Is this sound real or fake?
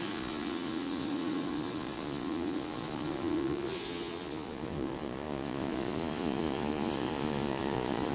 fake